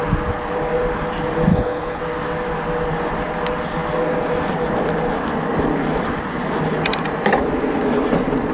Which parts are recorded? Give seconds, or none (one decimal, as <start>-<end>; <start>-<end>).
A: 0.0-1.5; 2.0-8.5